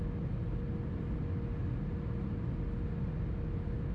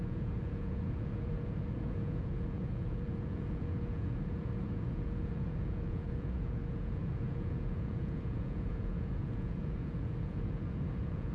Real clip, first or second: first